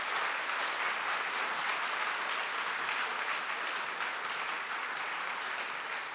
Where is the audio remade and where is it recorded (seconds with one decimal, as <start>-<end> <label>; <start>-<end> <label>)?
0.0-6.1 recorded